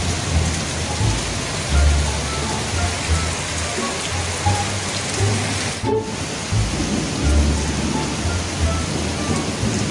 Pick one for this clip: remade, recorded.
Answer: recorded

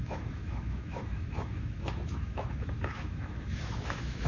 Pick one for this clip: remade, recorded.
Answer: remade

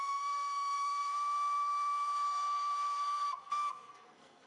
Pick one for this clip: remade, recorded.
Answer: remade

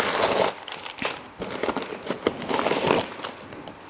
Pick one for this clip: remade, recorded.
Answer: recorded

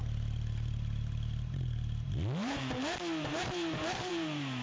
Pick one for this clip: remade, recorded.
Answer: remade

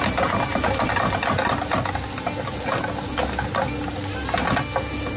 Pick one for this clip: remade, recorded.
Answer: recorded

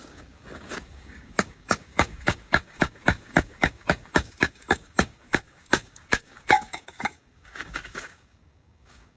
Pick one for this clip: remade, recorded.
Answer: remade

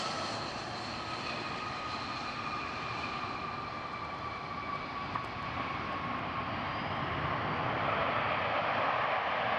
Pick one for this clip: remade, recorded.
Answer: recorded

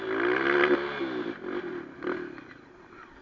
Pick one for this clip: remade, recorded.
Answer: recorded